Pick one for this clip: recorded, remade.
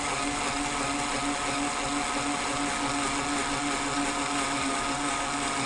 recorded